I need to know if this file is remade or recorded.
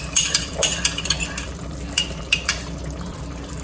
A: remade